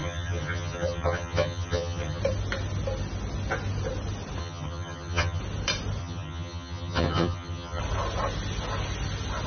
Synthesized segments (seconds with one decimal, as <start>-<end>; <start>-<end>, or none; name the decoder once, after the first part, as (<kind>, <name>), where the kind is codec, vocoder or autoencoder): 0.0-2.2 (vocoder, HiFi-GAN); 4.4-5.4; 6.0-7.8